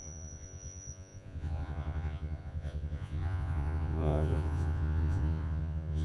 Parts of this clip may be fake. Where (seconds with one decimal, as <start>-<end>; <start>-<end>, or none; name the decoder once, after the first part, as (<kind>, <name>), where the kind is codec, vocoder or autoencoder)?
0.0-6.0 (vocoder, Vocos)